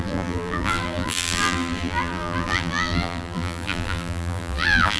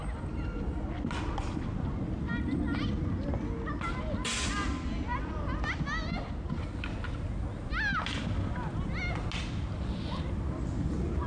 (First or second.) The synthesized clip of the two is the first